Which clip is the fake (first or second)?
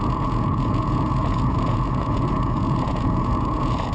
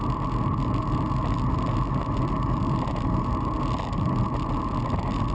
first